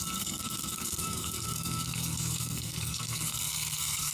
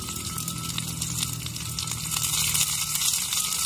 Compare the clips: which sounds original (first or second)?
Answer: second